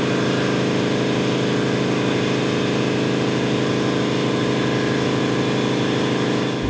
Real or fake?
real